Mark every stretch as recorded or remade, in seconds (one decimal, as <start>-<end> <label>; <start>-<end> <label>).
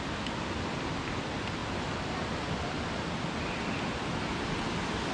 0.0-5.1 recorded